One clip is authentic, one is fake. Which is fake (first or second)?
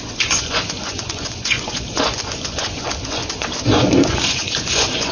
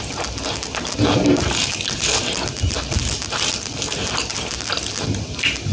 first